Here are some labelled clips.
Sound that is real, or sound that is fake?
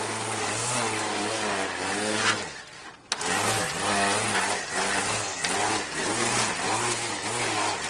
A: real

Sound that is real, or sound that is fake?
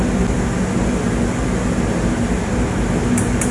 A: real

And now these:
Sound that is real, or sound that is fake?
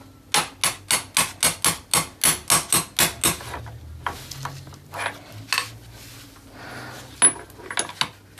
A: real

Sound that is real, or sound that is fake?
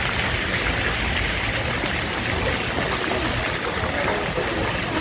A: real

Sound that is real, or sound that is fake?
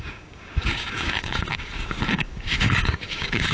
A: fake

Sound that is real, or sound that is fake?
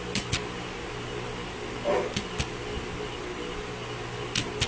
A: real